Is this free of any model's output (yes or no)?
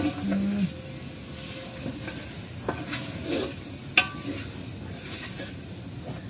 yes